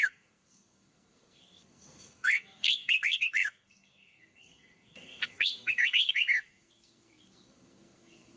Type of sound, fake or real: fake